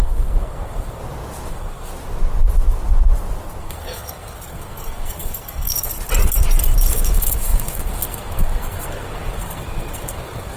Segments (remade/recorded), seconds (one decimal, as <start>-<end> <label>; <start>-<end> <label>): 0.0-1.0 remade; 1.0-1.5 recorded; 1.5-1.9 remade; 1.9-3.6 recorded; 3.6-5.9 remade; 5.9-6.9 recorded; 6.9-10.6 remade